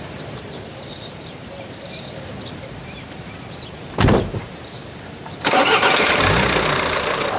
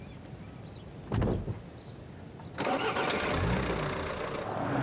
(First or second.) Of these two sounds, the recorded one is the second